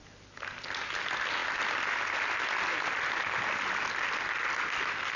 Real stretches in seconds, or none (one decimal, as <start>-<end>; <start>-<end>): 0.0-5.2